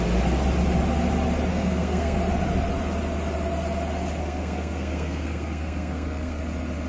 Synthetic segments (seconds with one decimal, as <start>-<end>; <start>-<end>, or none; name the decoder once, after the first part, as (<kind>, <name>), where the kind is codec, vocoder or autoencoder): 1.5-2.2 (codec, SNAC); 4.2-6.4